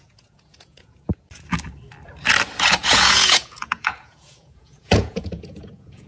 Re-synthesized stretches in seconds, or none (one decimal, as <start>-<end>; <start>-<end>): 0.0-1.1; 2.8-6.1